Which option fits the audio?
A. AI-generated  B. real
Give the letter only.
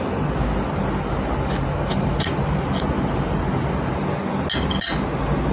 B